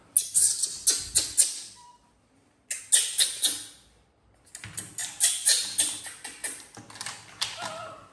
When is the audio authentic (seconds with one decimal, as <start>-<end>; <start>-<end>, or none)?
0.0-8.1